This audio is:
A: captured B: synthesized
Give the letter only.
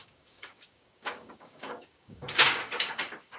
B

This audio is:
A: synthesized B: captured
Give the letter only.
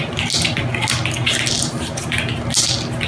B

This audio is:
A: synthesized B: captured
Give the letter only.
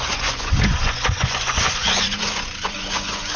A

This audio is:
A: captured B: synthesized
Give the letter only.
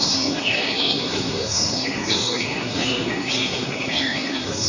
B